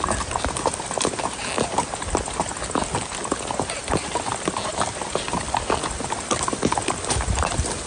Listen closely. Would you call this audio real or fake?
real